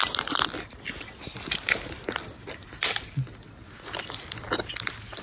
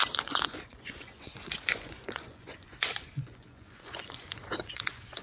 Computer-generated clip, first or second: second